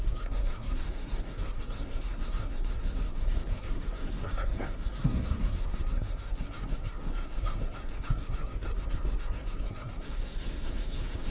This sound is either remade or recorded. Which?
remade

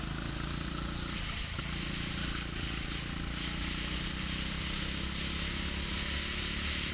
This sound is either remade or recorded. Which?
recorded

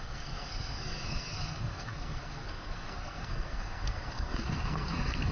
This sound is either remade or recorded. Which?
remade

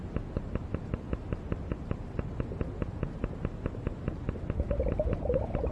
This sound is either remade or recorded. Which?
recorded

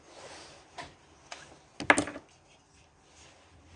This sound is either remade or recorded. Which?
recorded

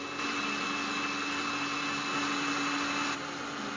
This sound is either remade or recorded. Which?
recorded